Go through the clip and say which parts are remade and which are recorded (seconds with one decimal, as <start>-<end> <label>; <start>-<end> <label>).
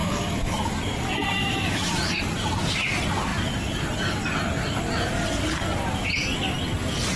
0.0-0.7 remade; 0.7-1.4 recorded; 1.4-1.9 remade; 1.9-7.2 recorded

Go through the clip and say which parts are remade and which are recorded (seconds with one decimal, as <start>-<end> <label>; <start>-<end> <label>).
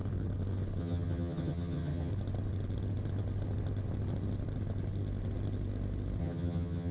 0.0-0.8 recorded; 0.8-2.1 remade; 2.1-6.2 recorded; 6.2-6.9 remade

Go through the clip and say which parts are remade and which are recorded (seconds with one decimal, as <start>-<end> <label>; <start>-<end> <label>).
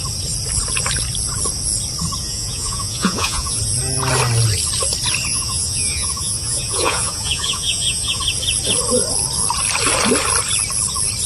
0.0-2.2 recorded; 2.2-3.6 remade; 3.6-5.3 recorded; 5.3-8.2 remade; 8.2-11.3 recorded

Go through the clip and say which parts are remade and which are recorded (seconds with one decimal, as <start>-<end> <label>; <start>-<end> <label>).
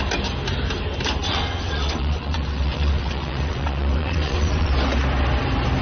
0.0-1.2 recorded; 1.2-4.7 remade; 4.7-5.8 recorded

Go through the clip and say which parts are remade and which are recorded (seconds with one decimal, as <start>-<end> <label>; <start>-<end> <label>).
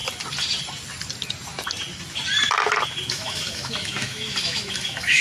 0.0-3.1 recorded; 3.1-5.2 remade